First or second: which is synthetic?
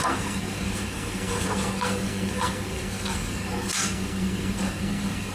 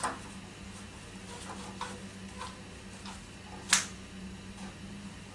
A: first